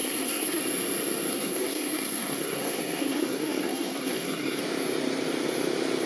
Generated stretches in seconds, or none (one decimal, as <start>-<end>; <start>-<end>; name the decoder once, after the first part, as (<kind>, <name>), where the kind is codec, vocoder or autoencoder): 0.0-0.6 (codec, SNAC); 1.3-4.6